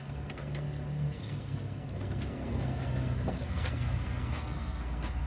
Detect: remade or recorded remade